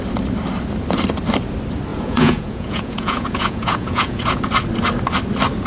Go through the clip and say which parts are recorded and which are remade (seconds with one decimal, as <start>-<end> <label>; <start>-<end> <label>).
0.0-1.9 recorded; 1.9-4.4 remade; 4.4-5.7 recorded